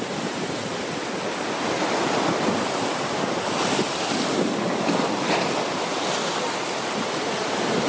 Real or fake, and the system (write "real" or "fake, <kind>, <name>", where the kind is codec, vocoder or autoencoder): real